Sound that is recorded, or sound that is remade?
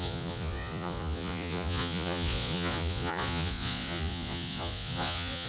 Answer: remade